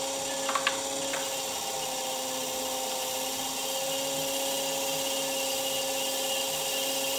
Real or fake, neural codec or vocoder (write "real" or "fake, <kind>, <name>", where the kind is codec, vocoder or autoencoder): real